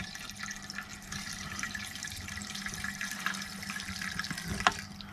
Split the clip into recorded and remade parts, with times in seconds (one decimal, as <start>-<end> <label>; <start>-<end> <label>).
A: 0.0-0.9 recorded; 0.9-3.7 remade; 3.7-5.1 recorded